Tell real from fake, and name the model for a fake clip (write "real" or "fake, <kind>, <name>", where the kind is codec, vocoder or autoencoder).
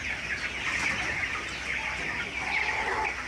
real